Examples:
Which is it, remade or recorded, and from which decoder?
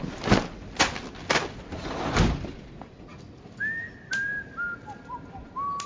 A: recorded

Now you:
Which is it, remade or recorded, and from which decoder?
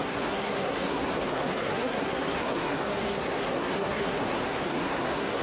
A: remade, codec, SNAC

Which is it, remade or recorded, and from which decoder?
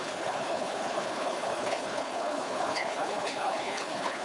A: remade, codec, HILCodec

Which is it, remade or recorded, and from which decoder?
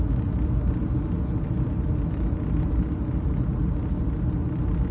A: recorded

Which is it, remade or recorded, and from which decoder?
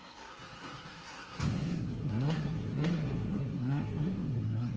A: remade, codec, SNAC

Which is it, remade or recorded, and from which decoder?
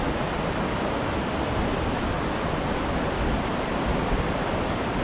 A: recorded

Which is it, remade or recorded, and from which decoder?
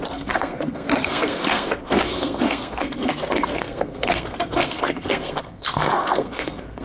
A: remade, codec, SNAC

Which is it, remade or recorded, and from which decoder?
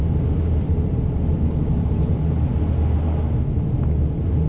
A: recorded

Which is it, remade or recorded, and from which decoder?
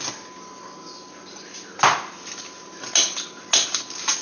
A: recorded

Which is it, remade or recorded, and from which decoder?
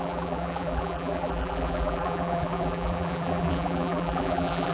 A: remade, vocoder, BigVGAN v2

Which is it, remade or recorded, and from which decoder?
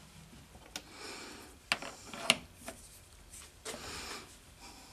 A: recorded